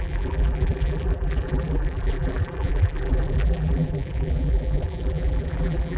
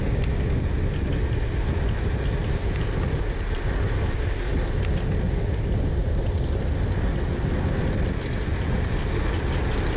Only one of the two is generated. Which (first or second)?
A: first